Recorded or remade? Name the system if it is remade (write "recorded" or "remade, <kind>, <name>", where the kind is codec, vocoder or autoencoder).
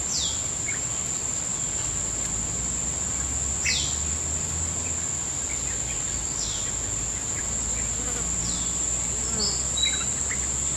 recorded